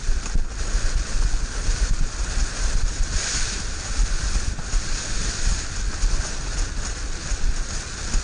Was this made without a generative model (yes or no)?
yes